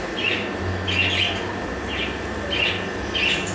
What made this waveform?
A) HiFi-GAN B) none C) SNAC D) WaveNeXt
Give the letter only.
B